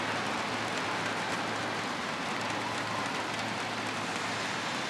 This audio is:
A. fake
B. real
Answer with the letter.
B